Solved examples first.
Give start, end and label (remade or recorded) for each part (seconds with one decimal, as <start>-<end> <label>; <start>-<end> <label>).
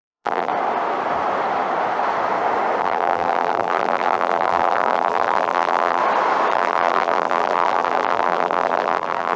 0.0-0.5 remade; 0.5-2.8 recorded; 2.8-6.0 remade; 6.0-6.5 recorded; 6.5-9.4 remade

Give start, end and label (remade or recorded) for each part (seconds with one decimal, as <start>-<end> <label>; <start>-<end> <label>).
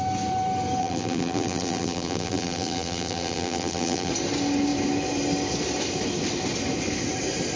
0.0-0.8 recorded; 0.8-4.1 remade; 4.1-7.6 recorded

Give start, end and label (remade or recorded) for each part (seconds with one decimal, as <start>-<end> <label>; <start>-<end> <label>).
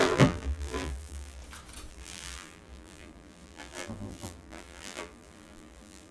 0.0-1.4 remade; 1.4-1.9 recorded; 1.9-6.1 remade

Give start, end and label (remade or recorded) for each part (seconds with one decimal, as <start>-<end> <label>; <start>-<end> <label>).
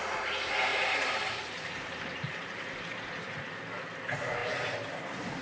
0.0-0.7 recorded; 0.7-3.4 remade; 3.4-5.4 recorded